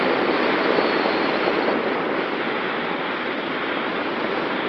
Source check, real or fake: real